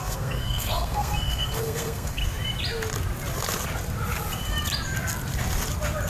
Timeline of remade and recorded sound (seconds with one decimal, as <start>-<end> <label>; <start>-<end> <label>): 0.0-2.2 remade; 2.2-6.1 recorded